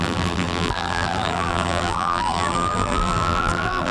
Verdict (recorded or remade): remade